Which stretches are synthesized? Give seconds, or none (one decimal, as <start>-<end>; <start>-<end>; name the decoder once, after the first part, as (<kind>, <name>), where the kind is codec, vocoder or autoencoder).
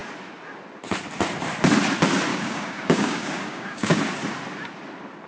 2.3-4.0 (codec, DAC)